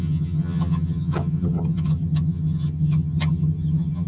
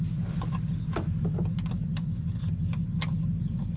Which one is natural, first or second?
second